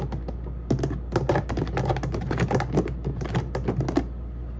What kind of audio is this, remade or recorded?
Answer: recorded